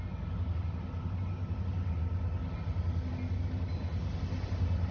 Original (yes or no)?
yes